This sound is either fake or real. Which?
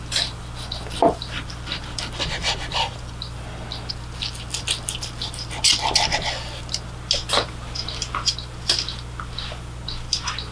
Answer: real